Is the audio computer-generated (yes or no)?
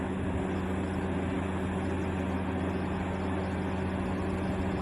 no